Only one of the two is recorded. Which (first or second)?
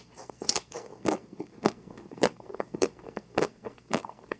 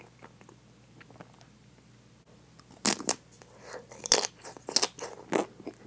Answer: second